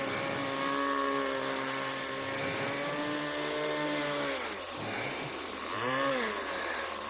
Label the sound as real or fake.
real